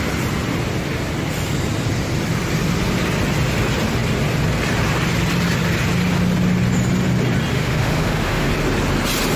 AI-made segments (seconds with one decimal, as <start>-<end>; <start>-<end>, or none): 7.5-8.5